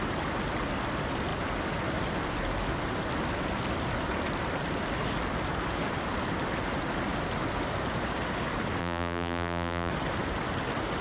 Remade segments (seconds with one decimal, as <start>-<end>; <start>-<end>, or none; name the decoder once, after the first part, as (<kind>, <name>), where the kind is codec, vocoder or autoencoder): 8.8-9.9 (vocoder, BigVGAN v2)

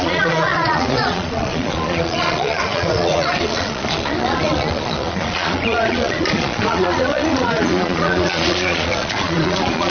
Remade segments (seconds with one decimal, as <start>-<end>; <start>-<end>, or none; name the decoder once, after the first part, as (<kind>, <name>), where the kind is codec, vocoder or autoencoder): 0.0-9.9 (vocoder, Vocos)

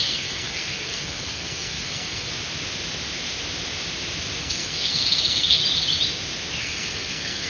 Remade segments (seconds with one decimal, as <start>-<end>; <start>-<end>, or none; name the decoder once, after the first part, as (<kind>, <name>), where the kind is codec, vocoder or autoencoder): 0.0-2.3 (codec, SNAC); 4.4-5.6; 6.6-7.5

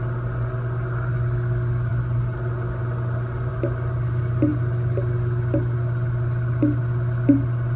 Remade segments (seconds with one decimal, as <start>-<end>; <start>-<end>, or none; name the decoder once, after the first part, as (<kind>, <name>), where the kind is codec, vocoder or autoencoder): none

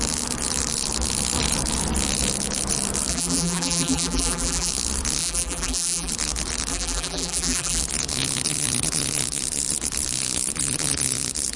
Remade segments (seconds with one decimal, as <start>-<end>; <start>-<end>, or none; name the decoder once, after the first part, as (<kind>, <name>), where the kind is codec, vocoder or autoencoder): 3.1-4.7 (vocoder, BigVGAN v2); 5.2-6.1; 6.7-7.8

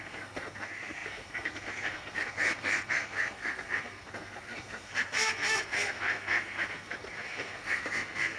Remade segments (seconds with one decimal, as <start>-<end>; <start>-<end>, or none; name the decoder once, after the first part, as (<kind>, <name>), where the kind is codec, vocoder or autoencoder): 0.0-8.4 (codec, SNAC)